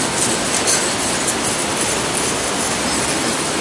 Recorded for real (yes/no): yes